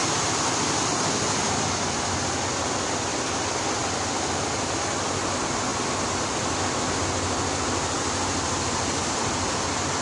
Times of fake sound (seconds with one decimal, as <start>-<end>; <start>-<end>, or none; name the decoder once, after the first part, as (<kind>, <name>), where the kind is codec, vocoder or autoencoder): none